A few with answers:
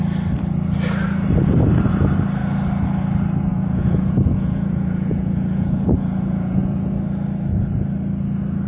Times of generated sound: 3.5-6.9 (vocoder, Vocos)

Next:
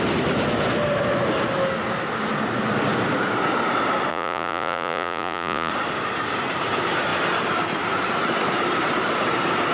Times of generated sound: 4.1-5.7 (vocoder, Vocos)

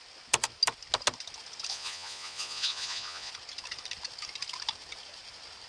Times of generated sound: 1.7-3.3 (vocoder, Vocos)

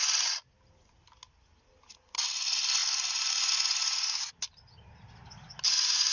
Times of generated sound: none